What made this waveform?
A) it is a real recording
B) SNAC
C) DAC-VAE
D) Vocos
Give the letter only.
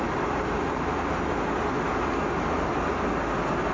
A